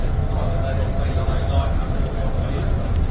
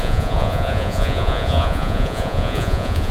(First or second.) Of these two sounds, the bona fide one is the first